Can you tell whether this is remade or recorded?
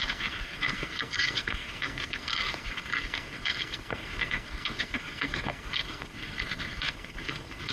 remade